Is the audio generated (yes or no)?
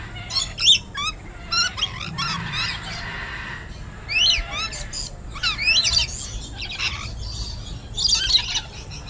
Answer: no